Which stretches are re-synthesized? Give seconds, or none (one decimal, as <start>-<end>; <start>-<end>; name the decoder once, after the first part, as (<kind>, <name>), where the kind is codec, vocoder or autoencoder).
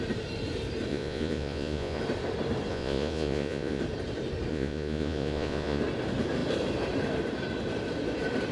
0.9-2.0 (vocoder, Vocos); 2.7-3.8; 4.5-5.8